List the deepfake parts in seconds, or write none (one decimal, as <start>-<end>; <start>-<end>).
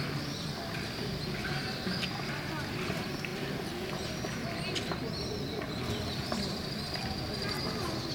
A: none